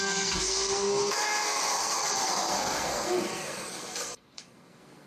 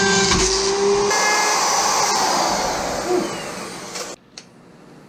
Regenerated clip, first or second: first